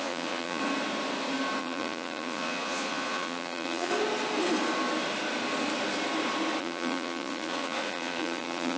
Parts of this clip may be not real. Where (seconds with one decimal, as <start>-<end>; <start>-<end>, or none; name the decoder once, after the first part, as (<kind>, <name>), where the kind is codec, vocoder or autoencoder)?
0.0-0.6 (vocoder, Vocos); 1.6-3.9; 6.6-8.8